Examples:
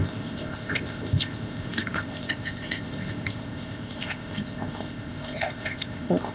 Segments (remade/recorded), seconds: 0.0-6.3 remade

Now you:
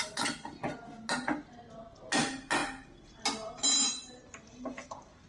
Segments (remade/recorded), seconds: 0.0-5.3 recorded